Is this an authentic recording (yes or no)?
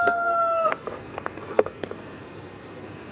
no